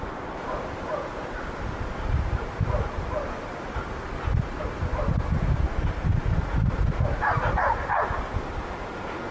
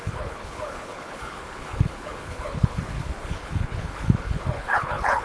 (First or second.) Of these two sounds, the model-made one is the second